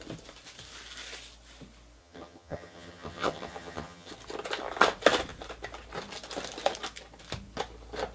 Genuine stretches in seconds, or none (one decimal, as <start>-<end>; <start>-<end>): 0.0-2.0; 4.1-8.1

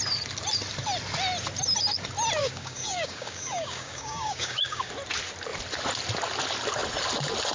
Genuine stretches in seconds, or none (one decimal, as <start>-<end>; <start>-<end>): 0.0-2.4; 4.9-7.5

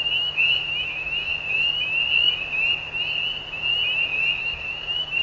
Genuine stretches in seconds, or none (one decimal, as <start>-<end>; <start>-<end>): 1.3-4.4

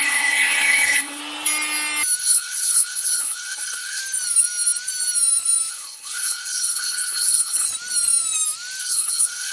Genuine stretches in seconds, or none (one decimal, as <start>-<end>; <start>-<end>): 1.2-2.2; 4.0-5.7; 7.7-8.8

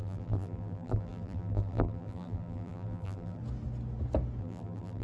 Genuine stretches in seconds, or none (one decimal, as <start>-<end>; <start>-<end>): 3.4-4.4

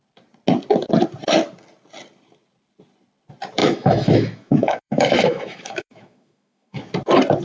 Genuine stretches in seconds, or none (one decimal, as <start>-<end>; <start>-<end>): 0.0-3.6; 6.9-7.4

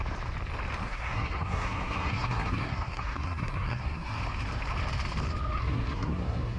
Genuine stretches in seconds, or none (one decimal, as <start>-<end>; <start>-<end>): 0.0-0.8; 4.2-5.6

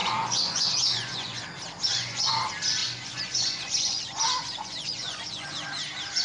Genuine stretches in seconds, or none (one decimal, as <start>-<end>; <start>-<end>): 1.4-1.9; 2.4-2.8; 5.7-6.2